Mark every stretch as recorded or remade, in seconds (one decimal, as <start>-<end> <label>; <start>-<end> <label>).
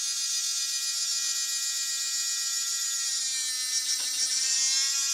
0.0-2.5 recorded; 2.5-3.2 remade; 3.2-3.9 recorded; 3.9-4.6 remade; 4.6-5.1 recorded